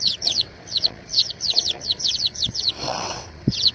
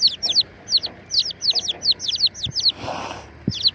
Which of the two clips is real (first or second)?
second